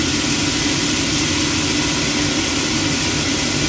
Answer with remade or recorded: recorded